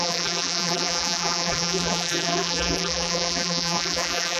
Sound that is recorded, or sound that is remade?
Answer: remade